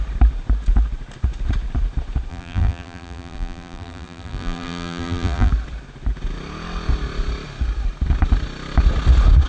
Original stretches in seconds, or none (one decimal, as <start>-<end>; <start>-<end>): 0.0-2.3; 5.5-9.5